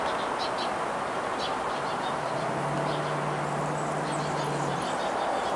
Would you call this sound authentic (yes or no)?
yes